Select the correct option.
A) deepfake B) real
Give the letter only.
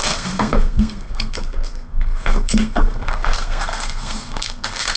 A